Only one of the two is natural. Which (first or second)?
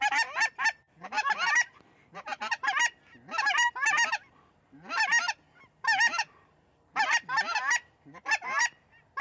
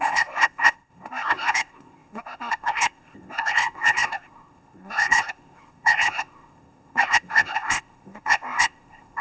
first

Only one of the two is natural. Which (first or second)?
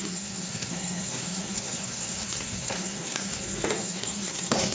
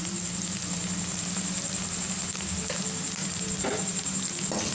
second